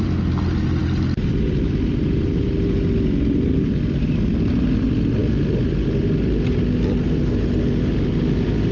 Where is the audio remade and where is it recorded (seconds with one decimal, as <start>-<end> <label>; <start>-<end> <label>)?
0.0-8.7 recorded